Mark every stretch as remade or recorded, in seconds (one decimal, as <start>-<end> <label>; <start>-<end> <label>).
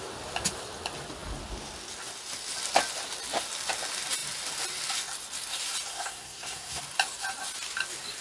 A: 0.0-5.9 recorded; 5.9-6.8 remade; 6.8-8.2 recorded